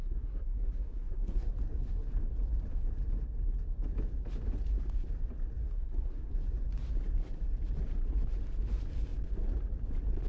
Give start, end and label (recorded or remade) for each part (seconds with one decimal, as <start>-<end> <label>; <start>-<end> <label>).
0.0-1.5 remade; 1.5-5.6 recorded; 5.6-6.3 remade; 6.3-10.3 recorded